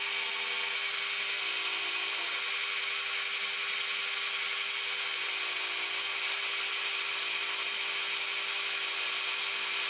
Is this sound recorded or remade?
recorded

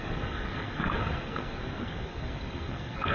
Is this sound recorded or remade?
remade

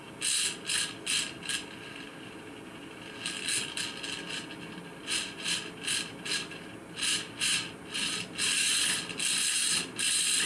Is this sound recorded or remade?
recorded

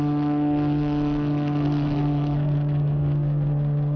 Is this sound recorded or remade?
remade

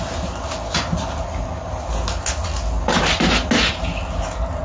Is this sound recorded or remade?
recorded